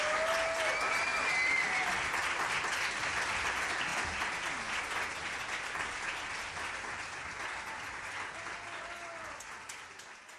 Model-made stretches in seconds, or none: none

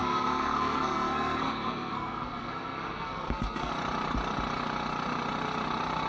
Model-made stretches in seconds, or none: 0.0-3.7 (codec, SNAC)

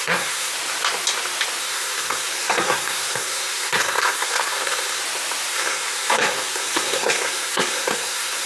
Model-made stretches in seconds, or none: 0.0-0.5 (codec, SNAC); 1.6-5.0; 5.5-8.5

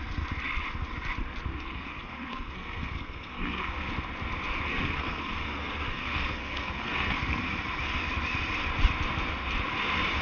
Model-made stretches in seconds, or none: 1.5-3.9 (codec, SNAC); 4.7-7.4

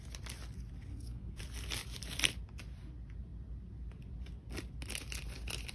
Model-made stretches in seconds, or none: 0.9-1.4 (codec, SNAC)

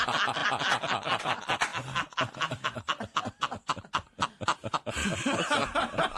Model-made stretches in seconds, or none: none

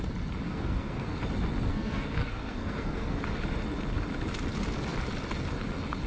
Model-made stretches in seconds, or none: 0.5-1.2 (codec, SNAC); 1.7-3.2